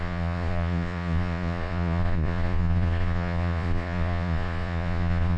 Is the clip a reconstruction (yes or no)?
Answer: yes